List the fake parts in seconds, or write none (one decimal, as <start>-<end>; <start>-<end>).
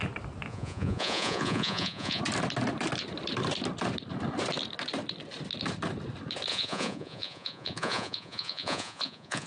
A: 0.5-2.2; 6.5-9.5